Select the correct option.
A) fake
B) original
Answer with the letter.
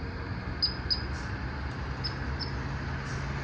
B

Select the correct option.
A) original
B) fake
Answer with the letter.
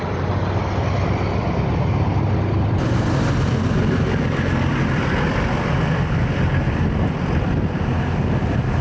A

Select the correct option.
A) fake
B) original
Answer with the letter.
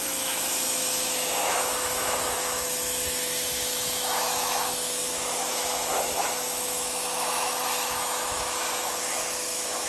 A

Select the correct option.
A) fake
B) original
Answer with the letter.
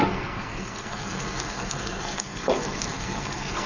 A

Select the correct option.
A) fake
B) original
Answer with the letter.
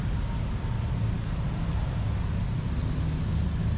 B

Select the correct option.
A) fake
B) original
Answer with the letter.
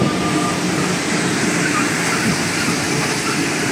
B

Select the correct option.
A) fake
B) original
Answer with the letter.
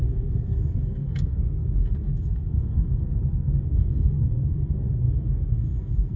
A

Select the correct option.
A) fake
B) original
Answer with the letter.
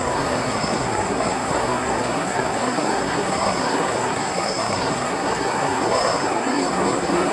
A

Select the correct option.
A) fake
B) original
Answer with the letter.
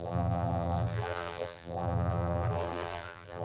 A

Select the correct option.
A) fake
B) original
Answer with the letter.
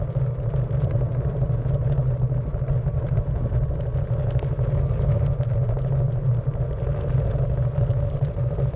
B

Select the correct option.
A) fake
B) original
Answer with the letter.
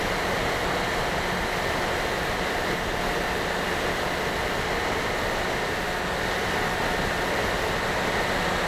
B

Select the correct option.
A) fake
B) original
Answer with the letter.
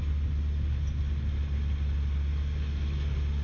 B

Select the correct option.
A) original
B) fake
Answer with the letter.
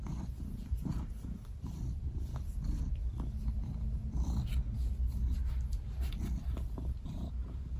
A